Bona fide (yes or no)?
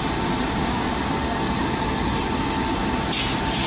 yes